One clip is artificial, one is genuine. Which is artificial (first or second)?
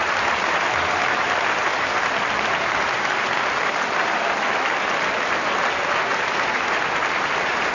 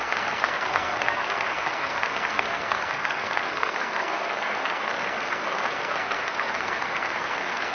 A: second